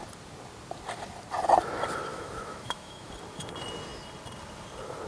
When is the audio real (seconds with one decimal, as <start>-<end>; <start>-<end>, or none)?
0.0-2.1; 3.1-5.1